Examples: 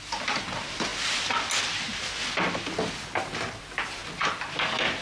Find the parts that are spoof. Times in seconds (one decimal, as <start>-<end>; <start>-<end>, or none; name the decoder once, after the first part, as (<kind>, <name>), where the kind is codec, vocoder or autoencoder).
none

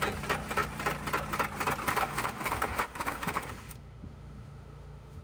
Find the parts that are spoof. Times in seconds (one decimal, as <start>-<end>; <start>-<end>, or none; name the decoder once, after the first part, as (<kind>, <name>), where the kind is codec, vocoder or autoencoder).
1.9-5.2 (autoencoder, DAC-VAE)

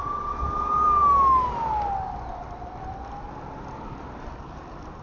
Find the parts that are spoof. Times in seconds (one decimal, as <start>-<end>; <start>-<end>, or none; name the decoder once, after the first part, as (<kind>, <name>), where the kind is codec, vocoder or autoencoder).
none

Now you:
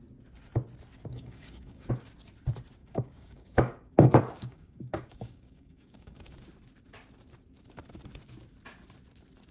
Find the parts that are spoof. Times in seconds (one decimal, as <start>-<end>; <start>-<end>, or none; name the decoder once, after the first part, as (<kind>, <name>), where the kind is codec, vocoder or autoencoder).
1.1-1.9 (codec, DAC); 2.8-6.3